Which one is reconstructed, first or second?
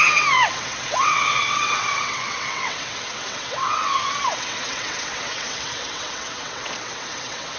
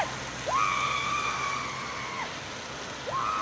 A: first